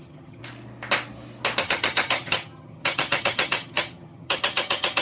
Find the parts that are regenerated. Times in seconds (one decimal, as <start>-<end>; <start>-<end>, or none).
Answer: 0.0-0.4; 1.6-5.0